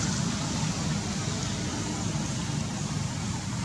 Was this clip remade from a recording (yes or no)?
no